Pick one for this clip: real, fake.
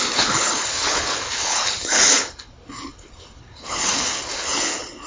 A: fake